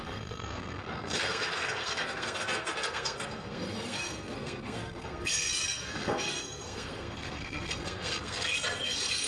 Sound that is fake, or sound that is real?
fake